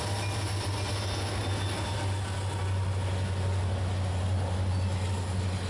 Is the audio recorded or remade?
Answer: recorded